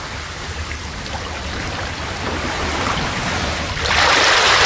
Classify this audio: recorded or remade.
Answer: recorded